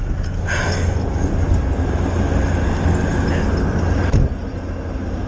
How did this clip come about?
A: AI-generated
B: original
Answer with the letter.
B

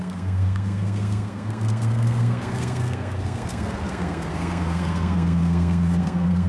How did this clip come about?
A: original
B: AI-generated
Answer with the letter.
B